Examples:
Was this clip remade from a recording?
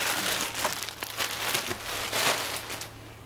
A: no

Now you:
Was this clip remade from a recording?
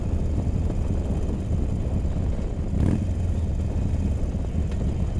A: no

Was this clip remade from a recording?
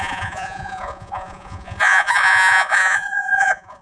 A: yes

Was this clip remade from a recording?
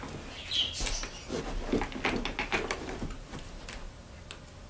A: no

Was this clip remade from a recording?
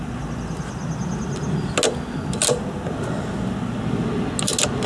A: no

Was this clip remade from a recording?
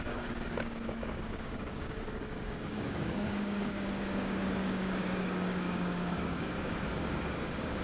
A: yes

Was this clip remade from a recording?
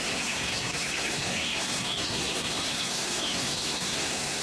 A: yes